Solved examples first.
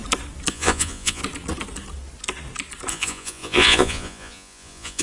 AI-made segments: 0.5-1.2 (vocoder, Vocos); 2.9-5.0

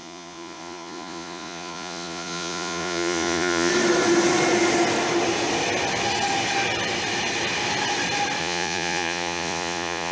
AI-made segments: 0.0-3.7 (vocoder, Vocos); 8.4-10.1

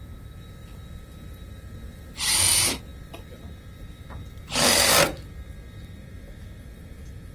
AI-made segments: none

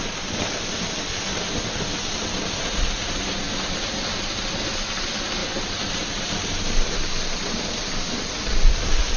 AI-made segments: none

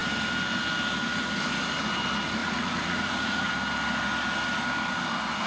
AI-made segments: 2.4-3.5 (vocoder, Vocos)

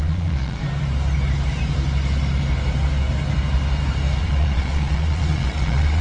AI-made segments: 0.0-0.6 (vocoder, Vocos); 4.2-6.0